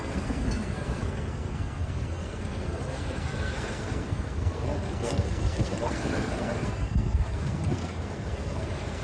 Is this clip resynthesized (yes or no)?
yes